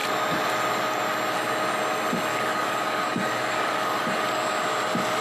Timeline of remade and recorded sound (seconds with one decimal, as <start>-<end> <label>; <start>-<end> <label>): 0.0-2.3 recorded; 2.3-4.6 remade; 4.6-5.2 recorded